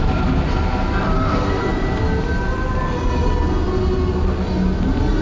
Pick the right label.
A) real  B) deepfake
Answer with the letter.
A